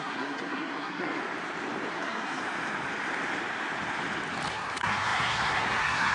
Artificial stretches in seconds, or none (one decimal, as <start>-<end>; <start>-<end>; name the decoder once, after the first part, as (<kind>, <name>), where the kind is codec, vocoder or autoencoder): 0.0-1.2 (codec, SNAC); 1.9-2.4; 4.5-6.1